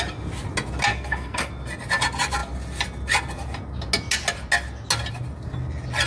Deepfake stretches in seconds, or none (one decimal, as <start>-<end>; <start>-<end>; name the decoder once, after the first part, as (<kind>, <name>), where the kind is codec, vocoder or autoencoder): 0.9-1.5 (codec, SNAC)